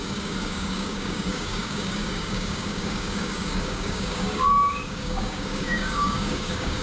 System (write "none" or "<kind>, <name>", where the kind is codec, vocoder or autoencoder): codec, DAC